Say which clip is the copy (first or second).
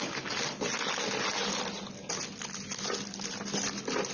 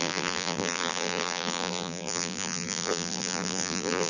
second